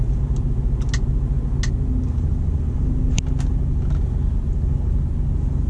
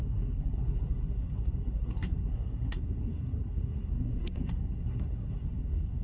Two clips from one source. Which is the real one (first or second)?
first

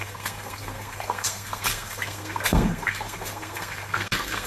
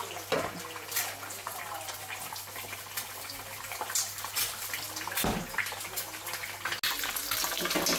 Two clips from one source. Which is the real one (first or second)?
second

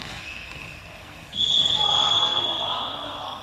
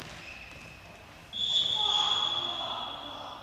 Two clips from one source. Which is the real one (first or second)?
second